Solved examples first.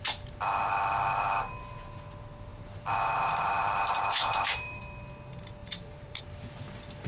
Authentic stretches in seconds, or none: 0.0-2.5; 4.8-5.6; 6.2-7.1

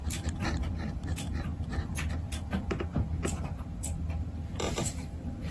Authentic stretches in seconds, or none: 1.5-4.5

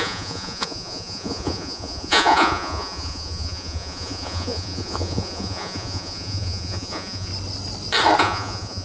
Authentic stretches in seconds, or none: 7.3-8.2

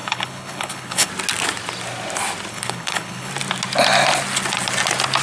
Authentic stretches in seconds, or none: 1.1-2.5; 3.3-5.2